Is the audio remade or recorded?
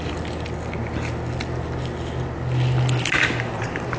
recorded